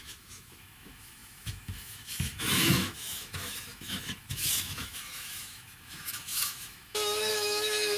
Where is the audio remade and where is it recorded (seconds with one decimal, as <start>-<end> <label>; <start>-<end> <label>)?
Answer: 0.0-8.0 remade